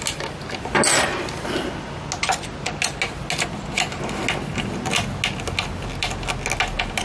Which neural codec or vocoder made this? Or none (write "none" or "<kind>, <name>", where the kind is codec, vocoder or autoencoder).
none